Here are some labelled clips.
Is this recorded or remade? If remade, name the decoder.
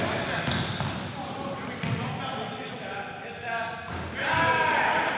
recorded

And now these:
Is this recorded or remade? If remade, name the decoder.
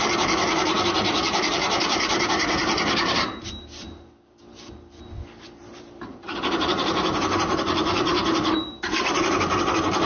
remade, vocoder, BigVGAN v2